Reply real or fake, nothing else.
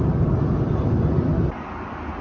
real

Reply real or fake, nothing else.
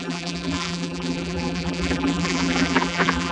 fake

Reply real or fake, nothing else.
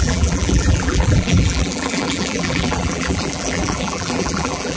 fake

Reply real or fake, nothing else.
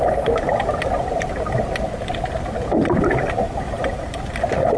real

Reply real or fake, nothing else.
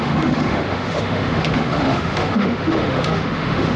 fake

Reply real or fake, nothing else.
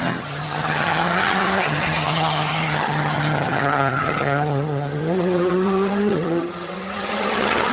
fake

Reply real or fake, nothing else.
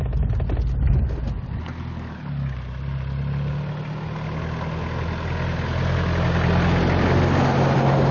real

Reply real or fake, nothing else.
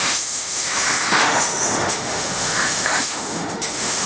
fake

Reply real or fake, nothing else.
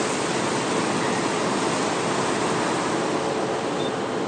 real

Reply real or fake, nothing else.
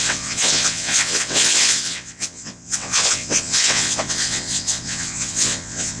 fake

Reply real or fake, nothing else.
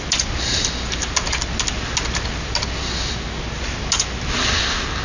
real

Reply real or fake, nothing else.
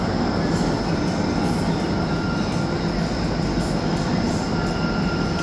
real